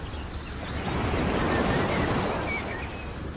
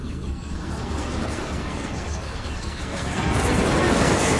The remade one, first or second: second